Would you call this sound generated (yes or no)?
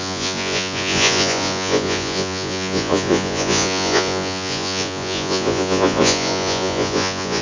yes